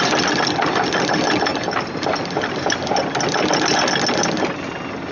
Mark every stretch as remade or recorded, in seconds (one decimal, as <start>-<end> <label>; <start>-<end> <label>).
0.0-5.1 recorded